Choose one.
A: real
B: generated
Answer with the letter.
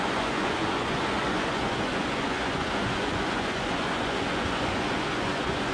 B